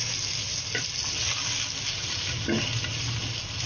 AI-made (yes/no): no